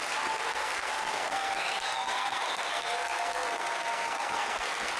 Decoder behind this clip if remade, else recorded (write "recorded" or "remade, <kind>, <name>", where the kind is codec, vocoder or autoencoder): remade, codec, SNAC